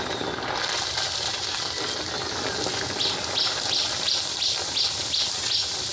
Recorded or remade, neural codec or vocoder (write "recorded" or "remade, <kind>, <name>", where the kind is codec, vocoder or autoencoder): recorded